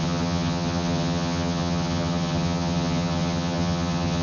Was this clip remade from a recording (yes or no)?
yes